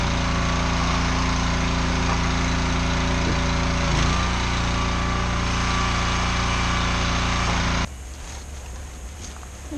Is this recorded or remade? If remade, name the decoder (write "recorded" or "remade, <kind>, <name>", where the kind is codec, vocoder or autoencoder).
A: recorded